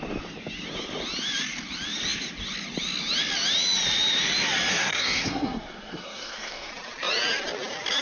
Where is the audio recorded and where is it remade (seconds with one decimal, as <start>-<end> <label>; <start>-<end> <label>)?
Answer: 0.0-4.7 recorded; 4.7-6.7 remade; 6.7-8.0 recorded